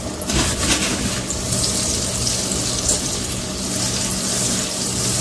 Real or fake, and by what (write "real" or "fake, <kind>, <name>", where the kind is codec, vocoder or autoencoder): real